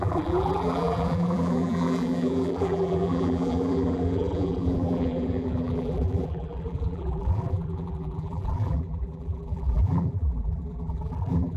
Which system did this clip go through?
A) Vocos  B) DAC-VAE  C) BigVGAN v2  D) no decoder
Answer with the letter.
C